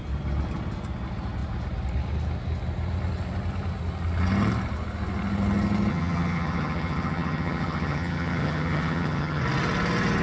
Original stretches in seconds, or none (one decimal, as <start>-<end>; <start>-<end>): 0.0-5.9; 9.4-10.2